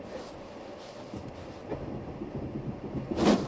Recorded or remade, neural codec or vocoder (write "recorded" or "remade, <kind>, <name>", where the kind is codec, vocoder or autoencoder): recorded